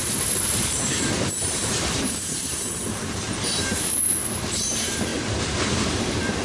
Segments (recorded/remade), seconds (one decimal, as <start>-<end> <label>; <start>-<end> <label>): 0.0-5.1 remade; 5.1-5.7 recorded; 5.7-6.4 remade